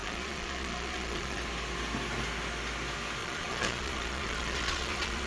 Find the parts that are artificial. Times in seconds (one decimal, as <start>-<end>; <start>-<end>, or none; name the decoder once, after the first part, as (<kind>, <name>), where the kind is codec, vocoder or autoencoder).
0.0-1.4 (vocoder, Vocos); 3.2-5.3